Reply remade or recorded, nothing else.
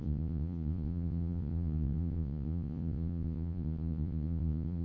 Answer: remade